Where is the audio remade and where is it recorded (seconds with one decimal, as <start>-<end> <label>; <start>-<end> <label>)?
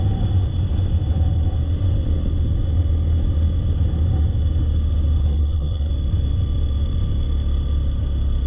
0.0-5.2 recorded; 5.2-5.9 remade; 5.9-8.5 recorded